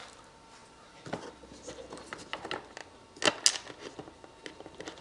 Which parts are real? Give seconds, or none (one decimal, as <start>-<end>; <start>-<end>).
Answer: 0.0-5.0